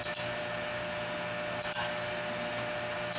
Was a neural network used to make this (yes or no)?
no